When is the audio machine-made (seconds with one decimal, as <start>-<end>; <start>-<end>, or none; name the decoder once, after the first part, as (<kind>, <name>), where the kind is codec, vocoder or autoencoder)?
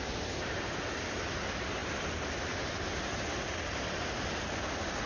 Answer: none